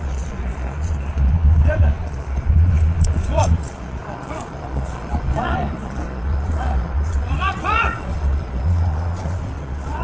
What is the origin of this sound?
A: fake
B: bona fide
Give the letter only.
A